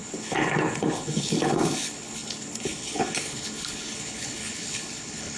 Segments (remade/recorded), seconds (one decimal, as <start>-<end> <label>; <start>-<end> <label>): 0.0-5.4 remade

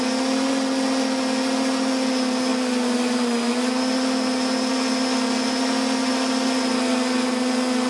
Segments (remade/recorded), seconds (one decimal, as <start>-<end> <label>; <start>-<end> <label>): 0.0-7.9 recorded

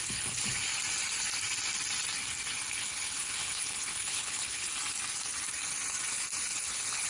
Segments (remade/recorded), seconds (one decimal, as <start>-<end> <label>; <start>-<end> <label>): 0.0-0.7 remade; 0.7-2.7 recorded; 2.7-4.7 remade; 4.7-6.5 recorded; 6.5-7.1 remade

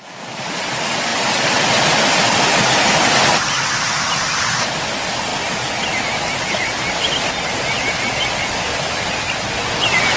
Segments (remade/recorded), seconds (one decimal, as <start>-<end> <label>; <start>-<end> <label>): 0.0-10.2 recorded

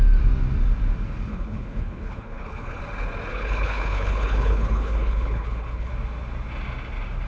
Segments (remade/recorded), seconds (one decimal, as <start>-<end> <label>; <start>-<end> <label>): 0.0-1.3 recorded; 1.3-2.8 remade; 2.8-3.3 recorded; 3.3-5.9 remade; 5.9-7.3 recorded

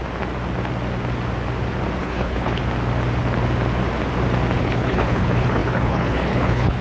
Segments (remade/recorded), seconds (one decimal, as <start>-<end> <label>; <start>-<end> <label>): 0.0-2.0 recorded; 2.0-2.6 remade; 2.6-4.6 recorded; 4.6-6.8 remade

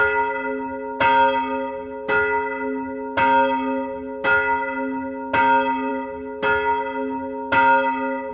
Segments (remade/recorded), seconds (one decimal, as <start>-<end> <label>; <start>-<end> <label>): 0.0-8.3 recorded